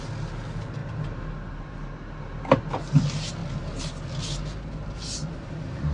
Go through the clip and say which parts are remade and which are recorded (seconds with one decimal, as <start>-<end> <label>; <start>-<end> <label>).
0.0-5.9 recorded